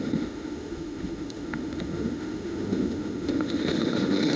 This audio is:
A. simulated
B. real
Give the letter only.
A